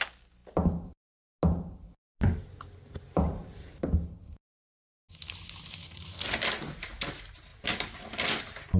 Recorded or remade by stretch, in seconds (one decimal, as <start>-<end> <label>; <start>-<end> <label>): 0.0-8.8 recorded